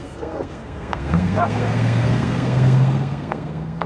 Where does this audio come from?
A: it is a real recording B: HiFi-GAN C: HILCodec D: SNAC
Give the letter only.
D